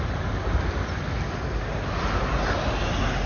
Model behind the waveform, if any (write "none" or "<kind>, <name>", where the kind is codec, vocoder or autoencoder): none